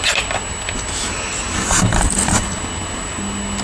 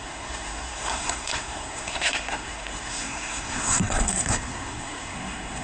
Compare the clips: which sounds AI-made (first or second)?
second